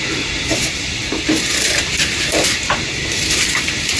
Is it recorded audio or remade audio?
remade